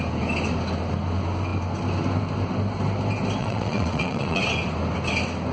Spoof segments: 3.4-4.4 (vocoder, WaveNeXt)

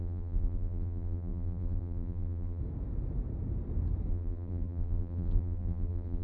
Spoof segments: 0.0-2.6 (vocoder, BigVGAN v2); 4.1-6.2

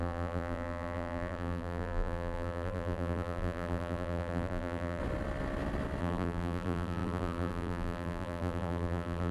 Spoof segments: 0.0-5.0 (vocoder, BigVGAN v2); 6.0-9.3

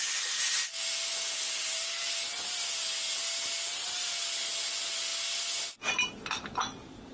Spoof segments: none

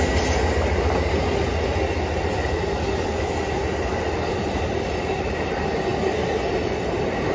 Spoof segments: none